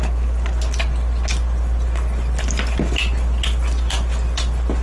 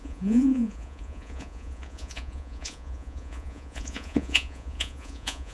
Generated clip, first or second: second